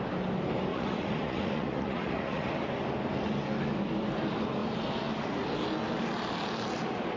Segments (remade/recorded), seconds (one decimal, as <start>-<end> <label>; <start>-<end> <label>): 0.0-0.7 recorded; 0.7-2.5 remade; 2.5-7.2 recorded